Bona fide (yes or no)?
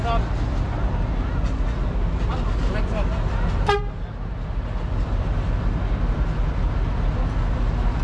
yes